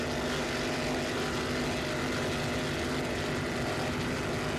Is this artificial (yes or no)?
no